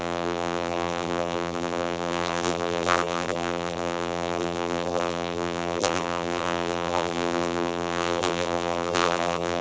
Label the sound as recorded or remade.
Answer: remade